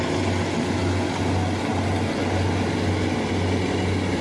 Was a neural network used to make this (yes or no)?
no